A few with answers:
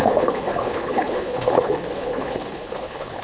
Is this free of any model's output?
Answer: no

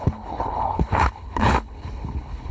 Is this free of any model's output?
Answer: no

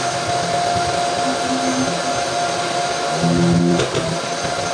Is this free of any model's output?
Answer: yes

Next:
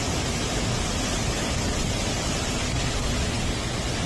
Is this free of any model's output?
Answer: yes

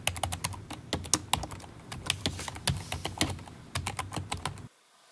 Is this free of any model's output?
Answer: yes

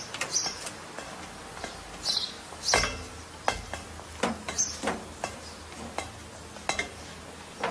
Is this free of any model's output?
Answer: yes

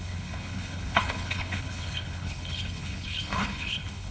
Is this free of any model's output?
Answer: no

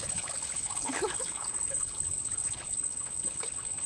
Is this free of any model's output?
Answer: no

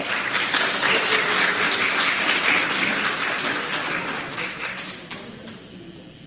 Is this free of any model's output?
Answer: yes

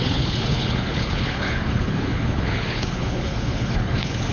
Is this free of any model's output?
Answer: no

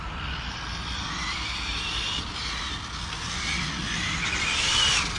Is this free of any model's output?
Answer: yes